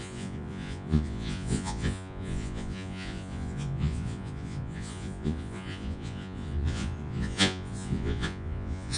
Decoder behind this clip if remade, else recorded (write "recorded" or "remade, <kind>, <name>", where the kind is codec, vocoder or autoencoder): remade, vocoder, Vocos